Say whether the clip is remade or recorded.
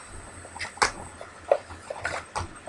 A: recorded